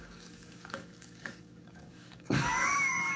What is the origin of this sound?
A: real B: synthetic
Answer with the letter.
B